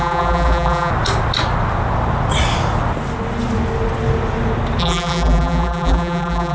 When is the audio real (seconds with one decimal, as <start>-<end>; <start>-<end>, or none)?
0.9-4.8